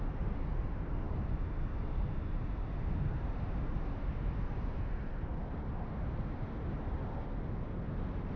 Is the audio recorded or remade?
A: recorded